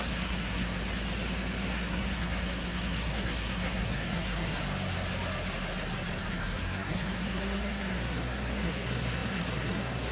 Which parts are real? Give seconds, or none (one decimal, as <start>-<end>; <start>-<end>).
0.8-1.7; 4.6-6.2